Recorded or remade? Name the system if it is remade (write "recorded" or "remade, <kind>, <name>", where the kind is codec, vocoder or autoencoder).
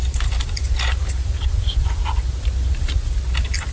recorded